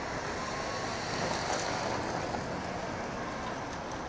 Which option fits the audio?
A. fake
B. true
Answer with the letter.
B